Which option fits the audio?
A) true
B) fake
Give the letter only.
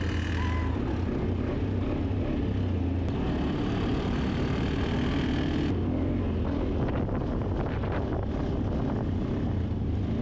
A